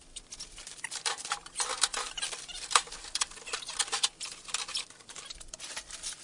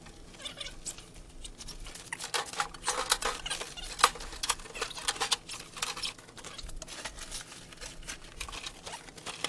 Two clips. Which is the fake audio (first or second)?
first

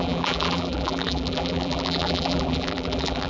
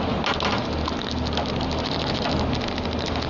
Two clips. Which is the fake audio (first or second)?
first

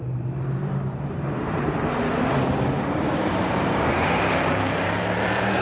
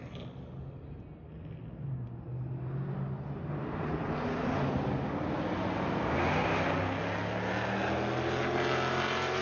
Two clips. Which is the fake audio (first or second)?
first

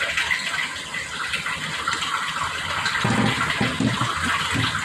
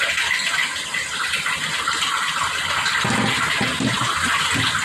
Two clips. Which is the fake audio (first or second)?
second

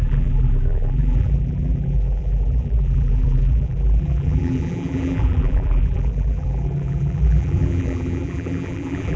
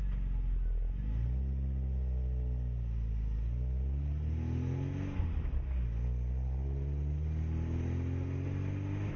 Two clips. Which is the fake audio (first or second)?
first